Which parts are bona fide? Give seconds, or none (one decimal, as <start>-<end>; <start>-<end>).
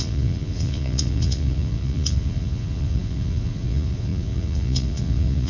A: none